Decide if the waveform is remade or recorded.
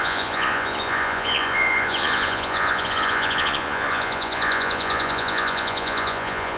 remade